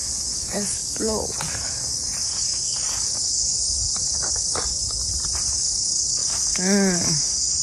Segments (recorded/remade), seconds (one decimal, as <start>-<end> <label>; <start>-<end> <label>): 0.0-5.0 remade; 5.0-5.5 recorded; 5.5-7.6 remade